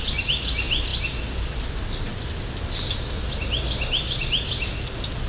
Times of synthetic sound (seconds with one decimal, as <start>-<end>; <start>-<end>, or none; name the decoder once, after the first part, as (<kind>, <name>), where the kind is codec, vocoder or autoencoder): none